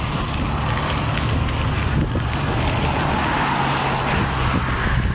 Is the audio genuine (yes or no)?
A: yes